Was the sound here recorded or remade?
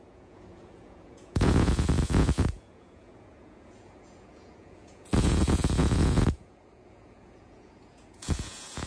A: remade